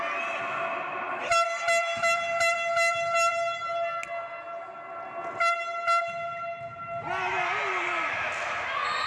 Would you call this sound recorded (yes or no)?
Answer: yes